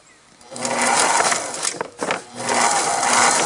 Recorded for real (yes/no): yes